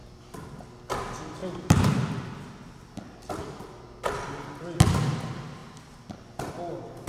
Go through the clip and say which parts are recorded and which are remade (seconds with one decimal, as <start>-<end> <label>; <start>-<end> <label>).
0.0-0.6 remade; 0.6-1.4 recorded; 1.4-2.1 remade; 2.1-5.6 recorded; 5.6-6.5 remade; 6.5-7.1 recorded